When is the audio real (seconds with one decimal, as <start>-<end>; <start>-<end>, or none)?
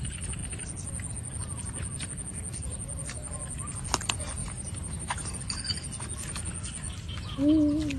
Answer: 0.0-4.4; 5.4-8.0